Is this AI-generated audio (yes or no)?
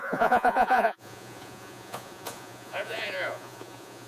yes